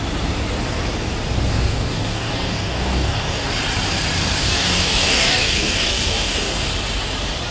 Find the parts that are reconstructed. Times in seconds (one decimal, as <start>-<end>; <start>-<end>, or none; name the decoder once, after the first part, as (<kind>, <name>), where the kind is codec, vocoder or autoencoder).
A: 1.5-3.5 (codec, DAC); 4.4-6.7